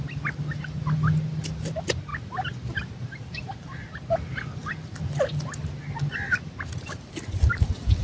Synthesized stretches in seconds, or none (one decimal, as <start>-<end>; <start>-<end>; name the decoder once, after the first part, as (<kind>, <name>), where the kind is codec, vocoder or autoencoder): none